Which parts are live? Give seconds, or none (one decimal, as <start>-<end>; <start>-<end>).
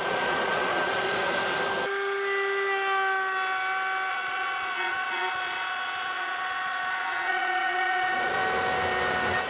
1.4-4.1; 8.4-9.5